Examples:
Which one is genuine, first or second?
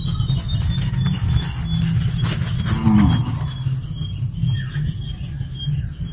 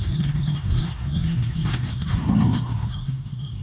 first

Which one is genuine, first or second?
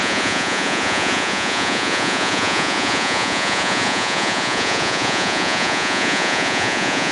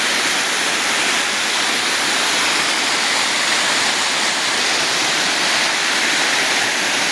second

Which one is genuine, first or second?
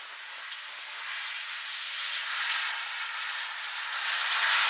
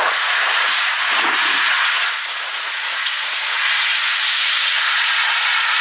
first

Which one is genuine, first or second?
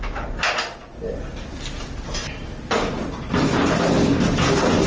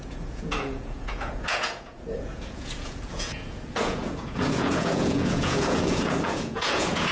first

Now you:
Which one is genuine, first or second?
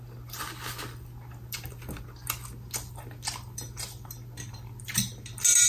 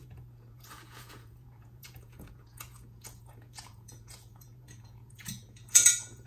first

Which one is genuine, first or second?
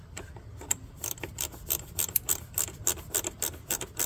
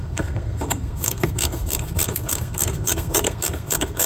first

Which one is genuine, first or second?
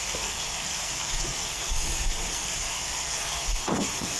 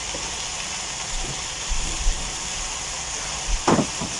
second